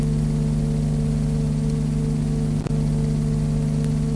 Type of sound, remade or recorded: recorded